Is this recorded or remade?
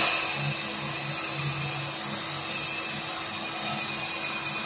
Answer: recorded